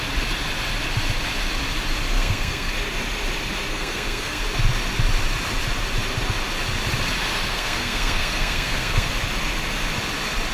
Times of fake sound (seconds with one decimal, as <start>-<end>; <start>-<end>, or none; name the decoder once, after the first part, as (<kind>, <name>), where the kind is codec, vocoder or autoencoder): 2.1-2.7 (codec, SNAC); 3.7-4.4; 7.5-9.1